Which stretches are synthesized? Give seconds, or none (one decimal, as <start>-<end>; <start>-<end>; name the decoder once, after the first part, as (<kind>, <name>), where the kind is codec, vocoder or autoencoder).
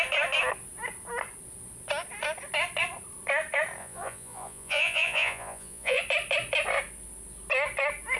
3.8-6.0 (vocoder, Vocos)